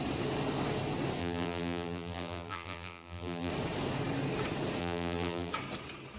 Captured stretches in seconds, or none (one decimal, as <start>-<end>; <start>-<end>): 0.0-1.2; 3.5-4.8; 5.5-6.2